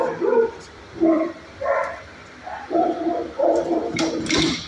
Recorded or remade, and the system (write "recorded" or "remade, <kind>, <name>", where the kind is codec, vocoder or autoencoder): remade, vocoder, BigVGAN v2